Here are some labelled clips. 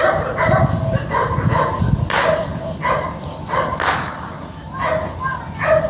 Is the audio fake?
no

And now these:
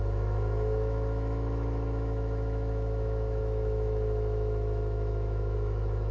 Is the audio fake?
yes